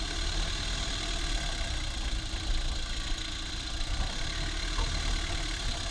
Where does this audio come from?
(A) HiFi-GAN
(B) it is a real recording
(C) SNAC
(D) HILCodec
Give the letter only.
B